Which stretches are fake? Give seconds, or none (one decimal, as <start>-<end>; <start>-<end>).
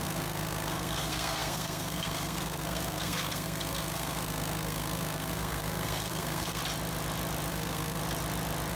0.0-6.6; 7.5-8.0